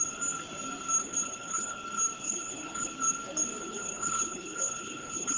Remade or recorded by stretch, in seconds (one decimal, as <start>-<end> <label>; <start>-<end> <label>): 0.0-1.0 recorded; 1.0-1.8 remade; 1.8-2.2 recorded; 2.2-2.9 remade; 2.9-3.6 recorded; 3.6-5.4 remade